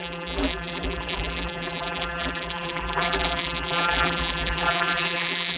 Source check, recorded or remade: remade